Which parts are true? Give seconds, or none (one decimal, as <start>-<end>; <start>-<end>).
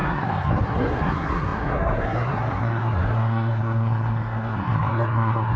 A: none